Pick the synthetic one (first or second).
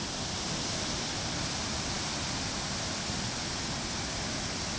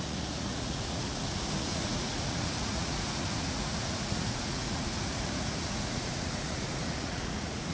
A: second